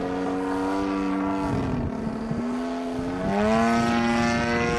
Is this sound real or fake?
real